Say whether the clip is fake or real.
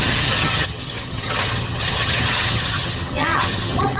fake